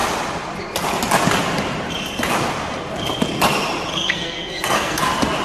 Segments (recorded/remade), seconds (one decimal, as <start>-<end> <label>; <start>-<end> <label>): 0.0-3.9 recorded; 3.9-5.0 remade; 5.0-5.4 recorded